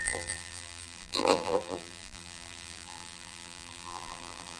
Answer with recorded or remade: remade